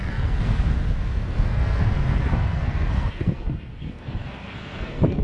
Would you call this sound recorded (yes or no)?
no